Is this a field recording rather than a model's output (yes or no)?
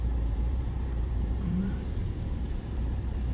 no